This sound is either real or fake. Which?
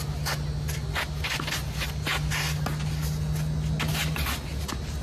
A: real